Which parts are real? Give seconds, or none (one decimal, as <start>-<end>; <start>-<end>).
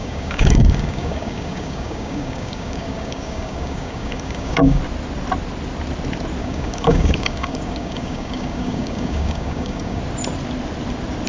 4.8-6.4; 10.0-11.3